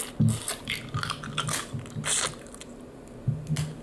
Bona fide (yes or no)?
yes